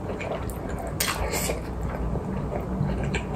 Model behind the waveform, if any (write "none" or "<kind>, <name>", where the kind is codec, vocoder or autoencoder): none